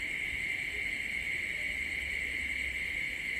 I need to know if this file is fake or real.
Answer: real